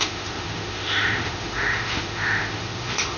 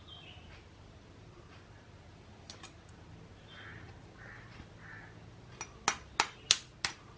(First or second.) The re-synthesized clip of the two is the first